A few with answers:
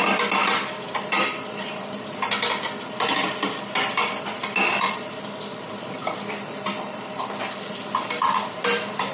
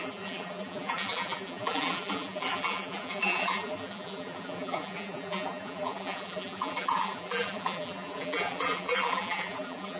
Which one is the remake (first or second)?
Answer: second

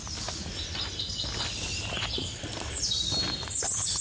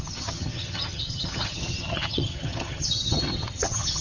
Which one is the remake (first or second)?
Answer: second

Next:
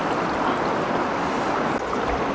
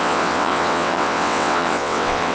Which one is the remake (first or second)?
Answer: second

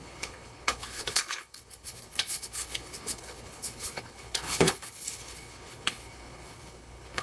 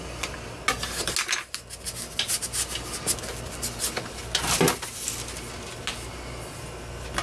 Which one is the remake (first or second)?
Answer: first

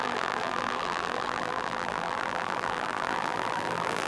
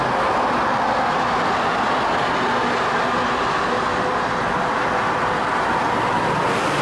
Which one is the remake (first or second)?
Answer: first